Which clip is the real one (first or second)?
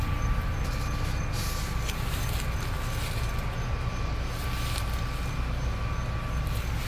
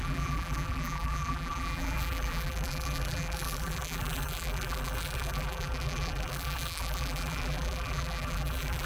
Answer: first